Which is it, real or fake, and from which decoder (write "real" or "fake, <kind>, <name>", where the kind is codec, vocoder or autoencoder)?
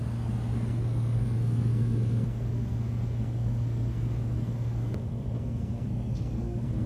fake, codec, SNAC